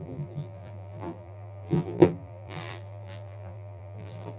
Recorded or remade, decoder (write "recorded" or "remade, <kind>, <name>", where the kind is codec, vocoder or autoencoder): remade, vocoder, BigVGAN v2